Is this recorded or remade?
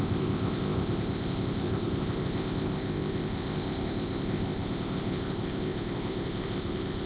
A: remade